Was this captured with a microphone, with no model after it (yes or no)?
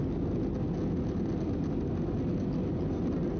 yes